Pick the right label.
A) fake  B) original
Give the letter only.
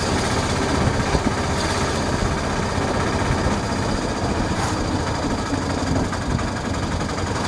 B